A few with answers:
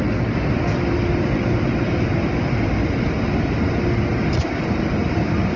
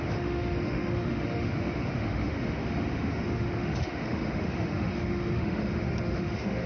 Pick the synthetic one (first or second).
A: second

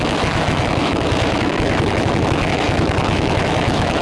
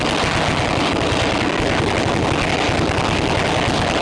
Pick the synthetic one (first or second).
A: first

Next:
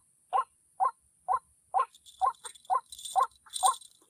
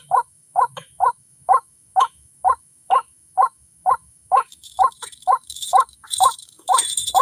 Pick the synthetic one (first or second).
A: second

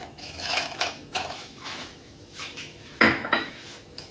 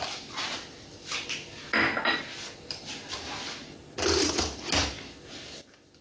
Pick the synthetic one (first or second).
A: first